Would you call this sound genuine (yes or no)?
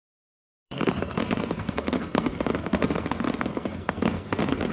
no